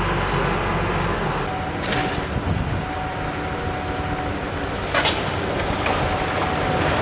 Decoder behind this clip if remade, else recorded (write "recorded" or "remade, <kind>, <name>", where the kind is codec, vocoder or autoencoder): recorded